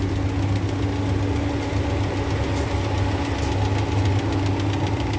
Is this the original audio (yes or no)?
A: yes